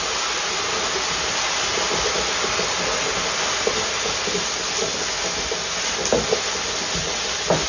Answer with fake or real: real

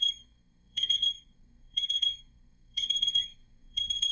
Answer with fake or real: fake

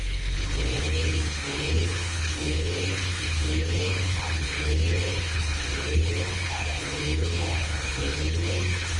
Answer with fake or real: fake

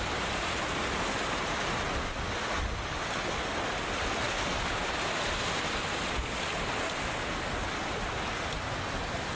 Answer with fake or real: real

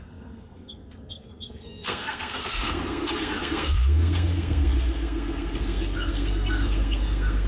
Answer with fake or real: fake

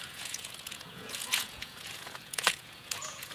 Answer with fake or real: fake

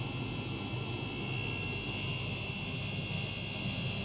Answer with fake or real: real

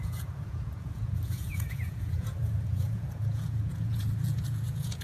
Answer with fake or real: fake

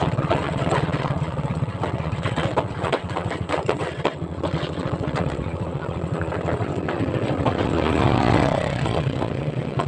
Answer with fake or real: fake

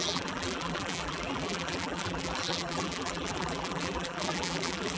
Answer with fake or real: fake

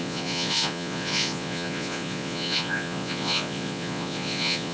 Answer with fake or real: fake